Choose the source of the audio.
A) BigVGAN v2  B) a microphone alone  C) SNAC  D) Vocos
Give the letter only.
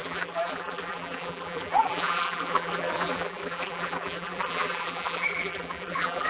A